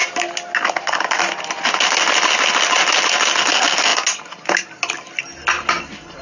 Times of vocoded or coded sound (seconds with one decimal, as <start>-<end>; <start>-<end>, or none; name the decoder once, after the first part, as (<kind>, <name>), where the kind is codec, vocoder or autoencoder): none